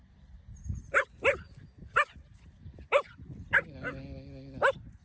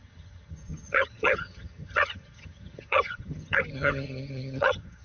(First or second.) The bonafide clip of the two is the first